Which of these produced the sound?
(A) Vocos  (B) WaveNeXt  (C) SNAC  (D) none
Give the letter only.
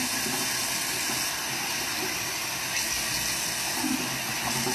D